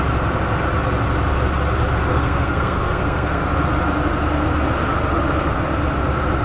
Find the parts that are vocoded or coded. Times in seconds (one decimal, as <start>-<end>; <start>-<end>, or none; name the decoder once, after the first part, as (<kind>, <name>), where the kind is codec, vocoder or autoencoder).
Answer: 2.1-3.4 (codec, SNAC)